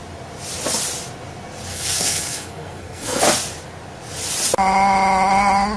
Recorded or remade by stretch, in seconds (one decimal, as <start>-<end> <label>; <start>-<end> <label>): 0.0-1.7 recorded; 1.7-3.2 remade; 3.2-5.8 recorded